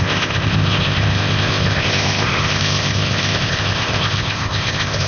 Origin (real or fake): fake